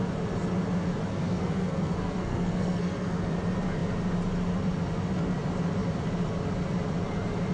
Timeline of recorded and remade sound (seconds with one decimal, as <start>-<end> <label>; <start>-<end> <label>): 0.0-1.1 recorded; 1.1-3.3 remade; 3.3-7.5 recorded